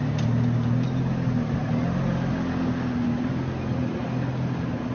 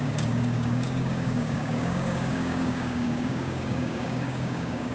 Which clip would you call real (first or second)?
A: first